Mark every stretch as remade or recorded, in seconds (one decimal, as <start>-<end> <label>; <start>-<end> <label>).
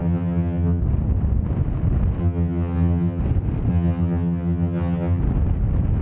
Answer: 0.0-0.8 remade; 0.8-2.2 recorded; 2.2-3.2 remade; 3.2-3.7 recorded; 3.7-5.2 remade; 5.2-6.0 recorded